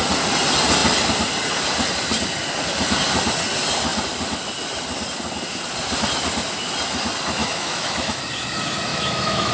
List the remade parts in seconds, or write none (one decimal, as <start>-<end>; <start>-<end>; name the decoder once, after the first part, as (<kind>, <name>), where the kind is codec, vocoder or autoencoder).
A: 7.4-8.2 (autoencoder, DAC-VAE); 8.9-9.5